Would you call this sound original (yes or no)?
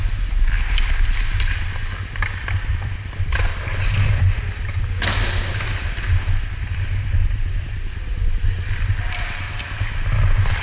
yes